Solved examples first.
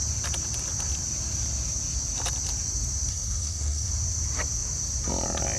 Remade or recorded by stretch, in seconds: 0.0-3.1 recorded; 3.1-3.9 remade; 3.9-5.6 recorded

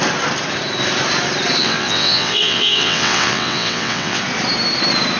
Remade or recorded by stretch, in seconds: 0.0-1.6 recorded; 1.6-4.2 remade; 4.2-5.2 recorded

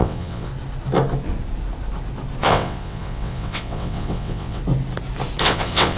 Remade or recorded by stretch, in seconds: 0.0-0.5 remade; 0.5-2.4 recorded; 2.4-4.6 remade; 4.6-5.4 recorded; 5.4-6.0 remade

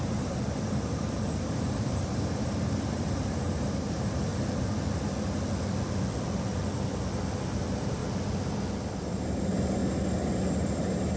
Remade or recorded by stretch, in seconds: 0.0-4.3 remade; 4.3-7.5 recorded; 7.5-8.0 remade; 8.0-9.1 recorded; 9.1-9.8 remade; 9.8-10.7 recorded; 10.7-11.2 remade

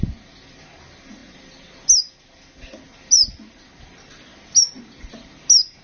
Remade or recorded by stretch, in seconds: 0.0-5.8 recorded

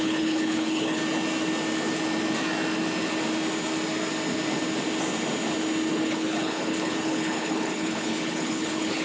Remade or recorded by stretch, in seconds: 0.0-1.0 remade; 1.0-5.9 recorded; 5.9-9.0 remade